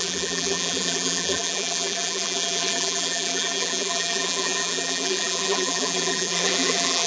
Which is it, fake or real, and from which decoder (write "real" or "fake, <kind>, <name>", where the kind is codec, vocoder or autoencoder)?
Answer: fake, vocoder, BigVGAN v2